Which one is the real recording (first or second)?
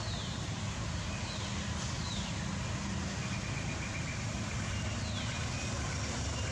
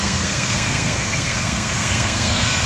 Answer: first